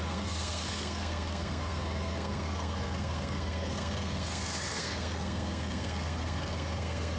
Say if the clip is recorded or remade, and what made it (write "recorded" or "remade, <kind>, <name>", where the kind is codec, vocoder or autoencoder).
remade, codec, SNAC